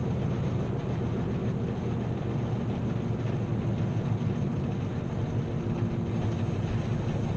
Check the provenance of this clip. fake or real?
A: real